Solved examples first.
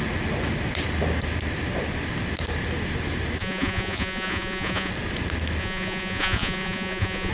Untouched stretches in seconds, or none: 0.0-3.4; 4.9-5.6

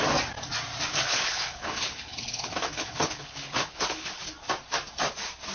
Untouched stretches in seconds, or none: 0.0-0.9; 4.2-5.5

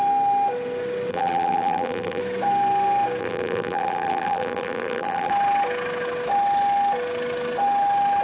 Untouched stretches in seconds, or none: 0.0-1.1; 2.2-3.2; 5.3-8.2

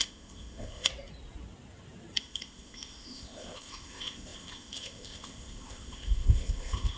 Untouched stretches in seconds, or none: 0.9-2.2

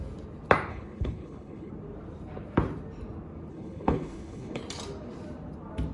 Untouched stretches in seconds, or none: 0.0-0.7; 1.7-3.5; 4.6-5.9

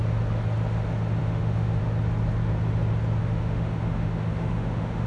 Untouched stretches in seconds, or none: 0.0-1.2; 1.8-3.2